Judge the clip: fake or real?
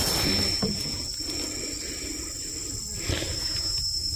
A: real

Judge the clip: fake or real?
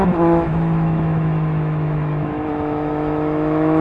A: fake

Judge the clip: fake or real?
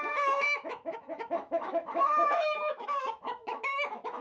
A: fake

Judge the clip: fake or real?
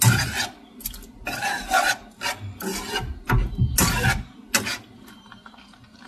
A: real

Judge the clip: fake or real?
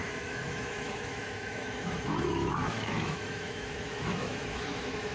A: fake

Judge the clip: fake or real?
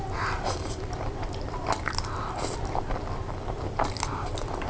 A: real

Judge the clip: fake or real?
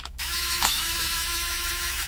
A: fake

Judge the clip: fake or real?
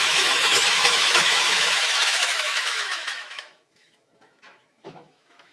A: fake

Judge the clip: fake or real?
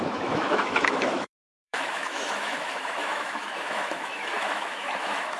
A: fake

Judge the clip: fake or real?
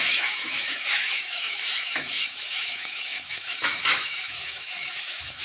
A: fake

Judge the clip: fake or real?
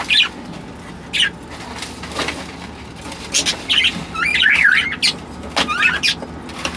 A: real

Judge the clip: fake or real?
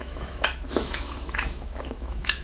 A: fake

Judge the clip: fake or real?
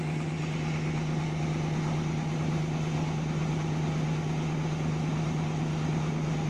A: real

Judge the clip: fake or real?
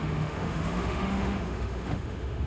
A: fake